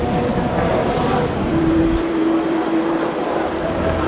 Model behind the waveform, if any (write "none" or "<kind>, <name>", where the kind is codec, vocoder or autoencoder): vocoder, BigVGAN v2